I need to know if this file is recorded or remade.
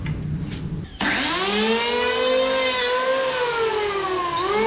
recorded